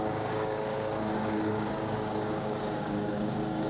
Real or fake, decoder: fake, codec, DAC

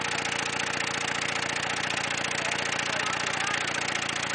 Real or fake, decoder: real